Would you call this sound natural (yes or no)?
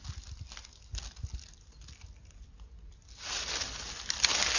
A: yes